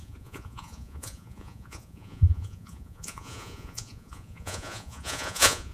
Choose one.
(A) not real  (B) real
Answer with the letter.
A